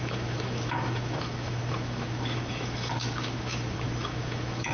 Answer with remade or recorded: remade